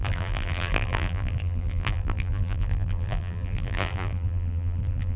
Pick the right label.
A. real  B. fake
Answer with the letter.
B